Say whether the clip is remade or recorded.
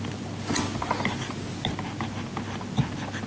recorded